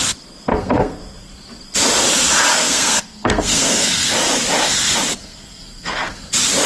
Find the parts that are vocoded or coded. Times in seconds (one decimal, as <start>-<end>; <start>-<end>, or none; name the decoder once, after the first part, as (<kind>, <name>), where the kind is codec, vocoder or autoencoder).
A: 0.5-1.0 (codec, SNAC); 2.5-4.1; 5.2-6.3